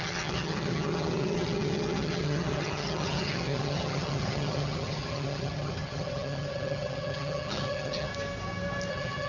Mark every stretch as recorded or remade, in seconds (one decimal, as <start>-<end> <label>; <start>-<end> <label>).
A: 0.0-8.1 remade; 8.1-8.9 recorded; 8.9-9.3 remade